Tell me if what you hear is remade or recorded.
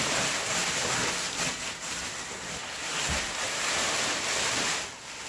recorded